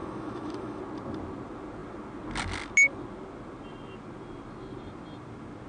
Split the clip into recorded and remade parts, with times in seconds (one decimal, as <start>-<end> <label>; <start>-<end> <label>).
0.0-0.8 remade; 0.8-5.7 recorded